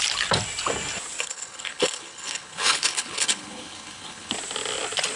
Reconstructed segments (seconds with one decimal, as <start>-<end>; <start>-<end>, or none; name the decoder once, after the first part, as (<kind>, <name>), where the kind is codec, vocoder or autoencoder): 1.2-4.3 (codec, HILCodec)

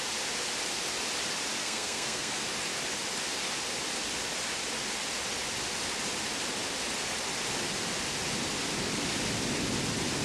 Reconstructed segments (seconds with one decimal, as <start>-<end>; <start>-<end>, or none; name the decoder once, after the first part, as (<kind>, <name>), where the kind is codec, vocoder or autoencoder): 1.6-2.4 (codec, SNAC)

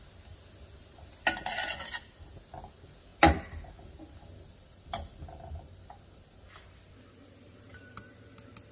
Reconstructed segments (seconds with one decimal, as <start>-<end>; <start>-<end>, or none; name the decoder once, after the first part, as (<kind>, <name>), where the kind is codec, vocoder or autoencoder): 3.1-7.9 (vocoder, BigVGAN v2)